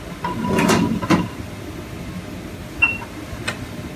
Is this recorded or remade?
recorded